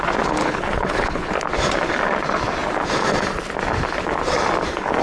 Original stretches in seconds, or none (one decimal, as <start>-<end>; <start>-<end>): 0.0-0.4; 1.3-5.0